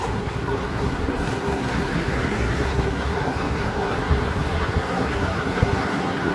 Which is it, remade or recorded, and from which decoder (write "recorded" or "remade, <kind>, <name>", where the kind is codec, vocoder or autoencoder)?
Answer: remade, codec, SNAC